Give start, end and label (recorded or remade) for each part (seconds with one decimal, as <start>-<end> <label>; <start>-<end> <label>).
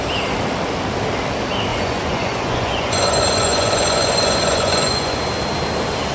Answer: 0.0-1.7 recorded; 1.7-5.2 remade; 5.2-6.1 recorded